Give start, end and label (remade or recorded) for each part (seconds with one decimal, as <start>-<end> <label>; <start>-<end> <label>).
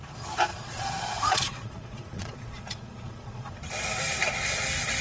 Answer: 0.0-0.5 recorded; 0.5-3.5 remade; 3.5-5.0 recorded